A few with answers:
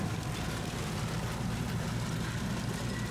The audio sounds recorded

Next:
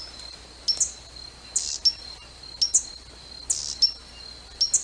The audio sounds recorded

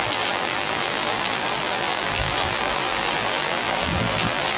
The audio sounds remade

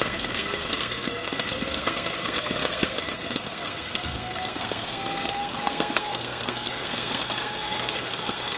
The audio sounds remade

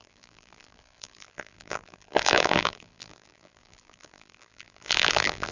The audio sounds remade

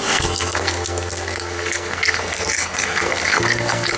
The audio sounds remade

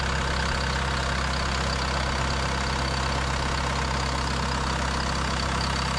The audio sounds recorded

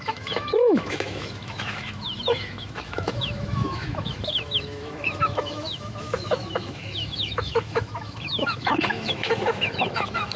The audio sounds remade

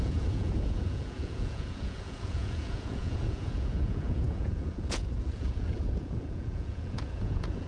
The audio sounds remade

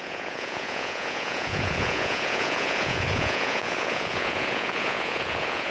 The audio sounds remade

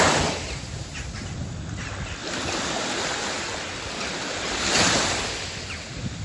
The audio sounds recorded